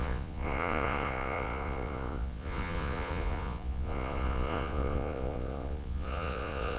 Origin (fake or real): fake